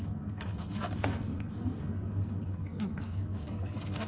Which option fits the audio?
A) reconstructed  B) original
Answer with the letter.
A